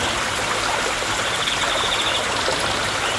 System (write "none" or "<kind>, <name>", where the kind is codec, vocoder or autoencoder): none